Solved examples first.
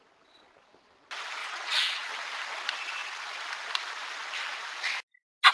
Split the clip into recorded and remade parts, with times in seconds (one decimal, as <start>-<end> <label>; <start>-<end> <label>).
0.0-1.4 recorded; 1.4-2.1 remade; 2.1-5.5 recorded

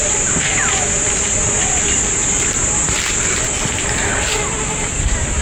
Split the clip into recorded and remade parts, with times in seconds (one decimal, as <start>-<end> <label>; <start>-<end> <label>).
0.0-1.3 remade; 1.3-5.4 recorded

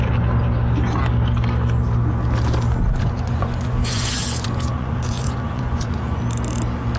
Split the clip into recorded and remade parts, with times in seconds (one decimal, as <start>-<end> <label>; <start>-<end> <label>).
0.0-2.9 recorded; 2.9-6.2 remade; 6.2-7.0 recorded